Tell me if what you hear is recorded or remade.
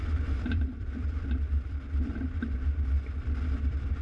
remade